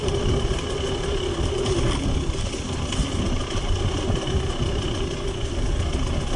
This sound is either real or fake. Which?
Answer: real